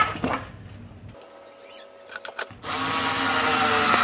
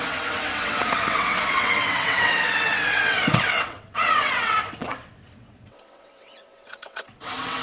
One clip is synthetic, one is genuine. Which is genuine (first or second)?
first